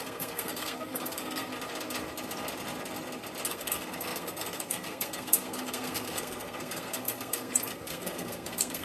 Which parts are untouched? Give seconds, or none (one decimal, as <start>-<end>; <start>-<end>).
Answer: 1.5-3.5